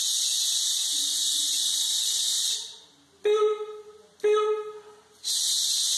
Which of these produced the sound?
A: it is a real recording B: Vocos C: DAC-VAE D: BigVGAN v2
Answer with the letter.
A